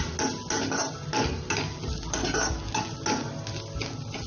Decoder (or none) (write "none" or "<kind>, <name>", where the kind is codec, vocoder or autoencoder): none